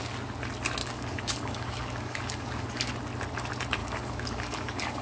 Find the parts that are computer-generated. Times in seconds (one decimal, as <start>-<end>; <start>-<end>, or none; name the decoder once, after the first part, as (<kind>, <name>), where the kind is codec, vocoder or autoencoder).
0.8-2.9 (codec, DAC); 3.8-5.0